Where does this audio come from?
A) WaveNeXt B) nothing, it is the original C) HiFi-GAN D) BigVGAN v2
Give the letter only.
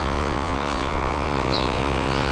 A